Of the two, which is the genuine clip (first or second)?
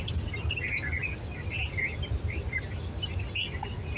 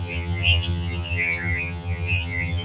first